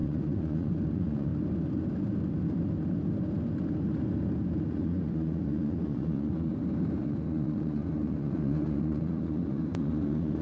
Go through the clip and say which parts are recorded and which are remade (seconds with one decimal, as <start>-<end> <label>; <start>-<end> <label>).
0.0-1.3 remade; 1.3-4.7 recorded; 4.7-6.5 remade; 6.5-7.0 recorded; 7.0-10.4 remade